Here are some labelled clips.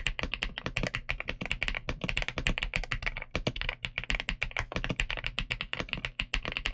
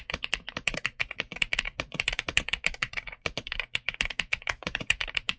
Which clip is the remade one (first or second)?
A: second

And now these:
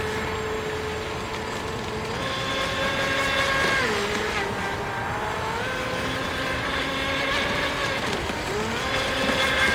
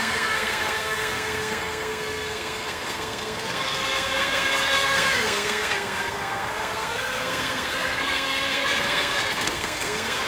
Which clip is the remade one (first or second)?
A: second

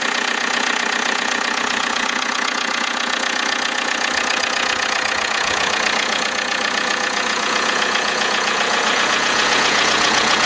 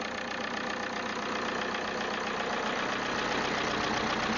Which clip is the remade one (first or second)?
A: first